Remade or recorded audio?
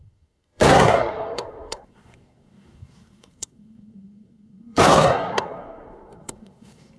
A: remade